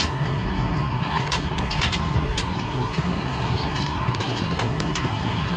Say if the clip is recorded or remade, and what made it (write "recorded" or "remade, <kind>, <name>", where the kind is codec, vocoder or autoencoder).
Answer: remade, codec, SNAC